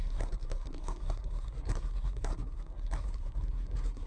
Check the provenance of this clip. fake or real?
fake